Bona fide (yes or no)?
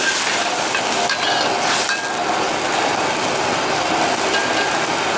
yes